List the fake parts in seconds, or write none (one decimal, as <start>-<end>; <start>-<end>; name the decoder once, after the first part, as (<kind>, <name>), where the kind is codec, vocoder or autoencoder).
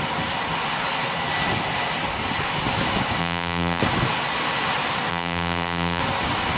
3.2-3.8 (vocoder, BigVGAN v2); 5.1-6.0